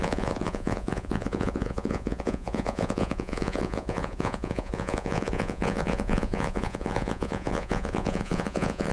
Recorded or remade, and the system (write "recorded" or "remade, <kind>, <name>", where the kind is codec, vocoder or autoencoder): remade, vocoder, Vocos